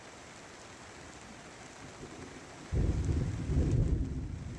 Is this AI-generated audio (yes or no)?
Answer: no